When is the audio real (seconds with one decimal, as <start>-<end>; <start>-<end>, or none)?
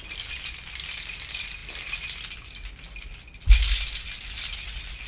0.0-5.1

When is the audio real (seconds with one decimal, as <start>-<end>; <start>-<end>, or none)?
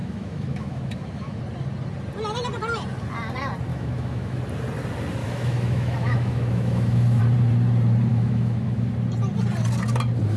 1.4-3.7; 4.4-5.2; 7.2-8.1; 8.9-10.4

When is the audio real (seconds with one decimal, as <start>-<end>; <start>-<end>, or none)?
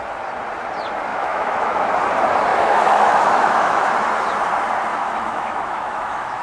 0.0-1.1; 1.9-2.5; 4.0-4.9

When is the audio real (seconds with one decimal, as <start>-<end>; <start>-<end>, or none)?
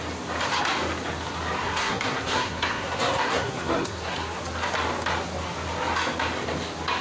0.0-1.6; 4.4-7.0